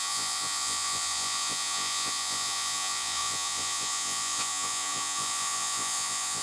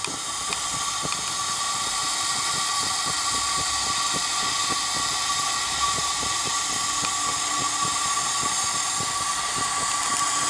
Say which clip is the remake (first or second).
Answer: first